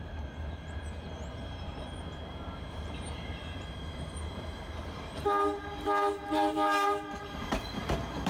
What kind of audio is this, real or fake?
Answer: fake